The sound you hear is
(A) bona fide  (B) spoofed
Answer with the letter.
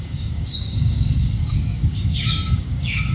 B